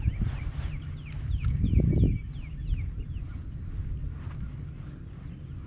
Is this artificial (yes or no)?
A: no